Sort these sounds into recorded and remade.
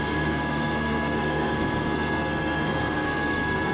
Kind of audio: remade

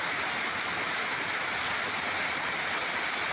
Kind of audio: recorded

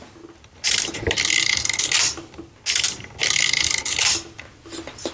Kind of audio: recorded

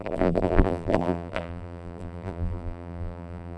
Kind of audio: remade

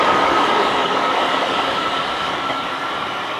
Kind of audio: remade